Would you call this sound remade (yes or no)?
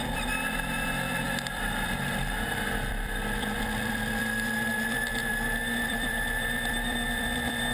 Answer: yes